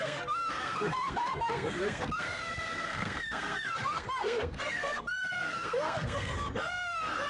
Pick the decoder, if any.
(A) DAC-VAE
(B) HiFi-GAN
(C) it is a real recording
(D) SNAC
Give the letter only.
D